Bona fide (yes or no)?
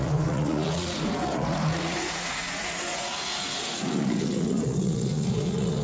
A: no